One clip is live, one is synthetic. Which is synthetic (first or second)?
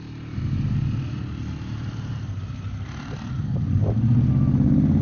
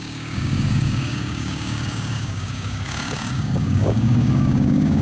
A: second